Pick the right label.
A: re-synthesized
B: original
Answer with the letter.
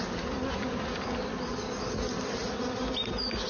B